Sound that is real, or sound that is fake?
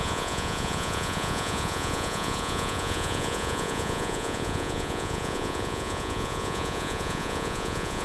fake